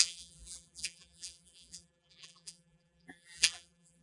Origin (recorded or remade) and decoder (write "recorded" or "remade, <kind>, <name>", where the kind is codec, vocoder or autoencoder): remade, vocoder, BigVGAN v2